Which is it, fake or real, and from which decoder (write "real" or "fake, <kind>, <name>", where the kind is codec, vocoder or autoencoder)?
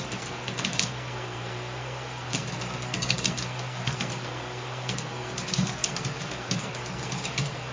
fake, codec, SNAC